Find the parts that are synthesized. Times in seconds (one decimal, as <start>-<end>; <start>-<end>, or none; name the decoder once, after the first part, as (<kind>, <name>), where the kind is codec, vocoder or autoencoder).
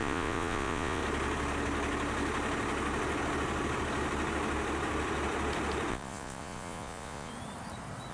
0.0-1.0 (vocoder, Vocos); 5.9-7.3